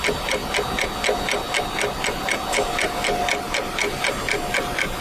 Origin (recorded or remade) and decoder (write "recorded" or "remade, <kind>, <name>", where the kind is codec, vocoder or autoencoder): recorded